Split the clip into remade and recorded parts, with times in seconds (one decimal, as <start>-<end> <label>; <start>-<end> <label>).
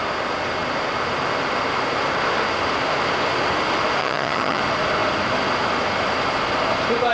0.0-4.0 recorded; 4.0-4.6 remade; 4.6-7.1 recorded